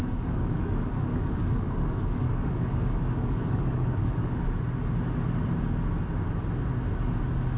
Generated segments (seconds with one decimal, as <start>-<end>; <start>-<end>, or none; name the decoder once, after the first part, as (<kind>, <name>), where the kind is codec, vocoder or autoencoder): 0.0-4.6 (codec, DAC)